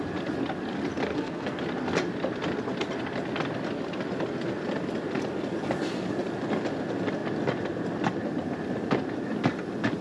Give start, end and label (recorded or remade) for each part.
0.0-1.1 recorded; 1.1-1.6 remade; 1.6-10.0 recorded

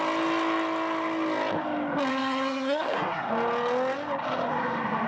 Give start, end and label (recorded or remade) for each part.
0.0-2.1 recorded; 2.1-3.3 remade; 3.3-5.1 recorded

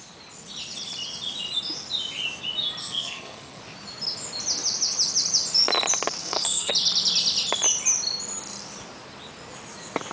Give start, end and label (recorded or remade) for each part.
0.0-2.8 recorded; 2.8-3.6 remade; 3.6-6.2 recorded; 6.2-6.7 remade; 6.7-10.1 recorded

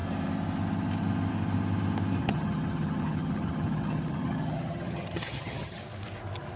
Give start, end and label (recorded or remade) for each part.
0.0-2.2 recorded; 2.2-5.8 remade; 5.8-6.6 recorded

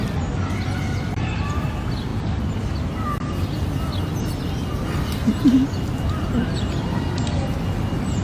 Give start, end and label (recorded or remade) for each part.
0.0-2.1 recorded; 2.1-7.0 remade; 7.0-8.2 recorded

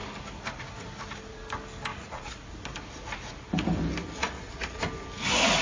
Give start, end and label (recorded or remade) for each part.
0.0-1.9 recorded; 1.9-2.5 remade; 2.5-4.2 recorded; 4.2-4.8 remade; 4.8-5.6 recorded

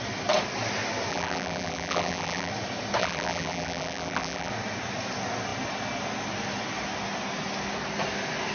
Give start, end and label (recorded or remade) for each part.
0.0-1.1 recorded; 1.1-2.5 remade; 2.5-3.0 recorded; 3.0-4.5 remade; 4.5-8.5 recorded

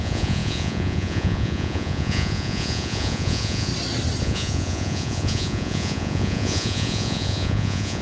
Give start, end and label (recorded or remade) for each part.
0.0-3.7 remade; 3.7-4.2 recorded; 4.2-8.0 remade